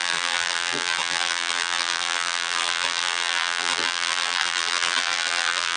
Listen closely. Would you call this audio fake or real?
fake